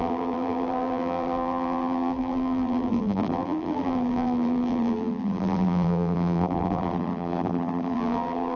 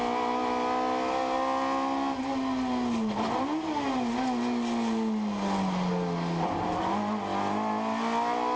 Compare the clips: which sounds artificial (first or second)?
first